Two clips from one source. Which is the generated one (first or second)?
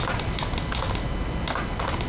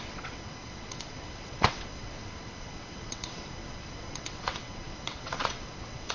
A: second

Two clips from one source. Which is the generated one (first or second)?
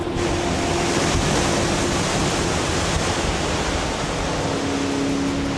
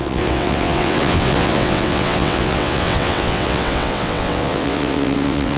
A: second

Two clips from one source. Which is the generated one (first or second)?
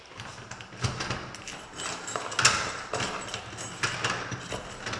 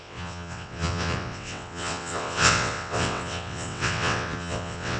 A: second